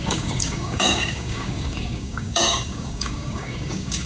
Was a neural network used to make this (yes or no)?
yes